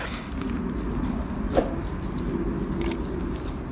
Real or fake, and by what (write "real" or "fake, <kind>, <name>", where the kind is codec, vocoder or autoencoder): real